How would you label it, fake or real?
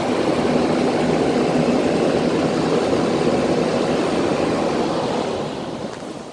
real